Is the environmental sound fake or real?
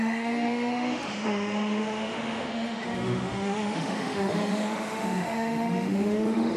fake